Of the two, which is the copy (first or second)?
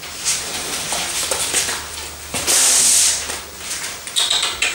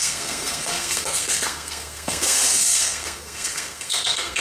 second